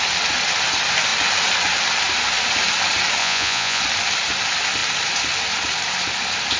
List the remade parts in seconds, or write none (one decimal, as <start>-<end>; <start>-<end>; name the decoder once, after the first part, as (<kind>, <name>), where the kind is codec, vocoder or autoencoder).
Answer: 3.2-3.8 (vocoder, Vocos)